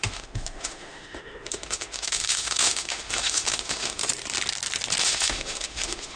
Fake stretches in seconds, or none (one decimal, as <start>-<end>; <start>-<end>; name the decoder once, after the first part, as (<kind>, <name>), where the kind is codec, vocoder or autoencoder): 0.0-4.0 (autoencoder, DAC-VAE); 5.0-6.2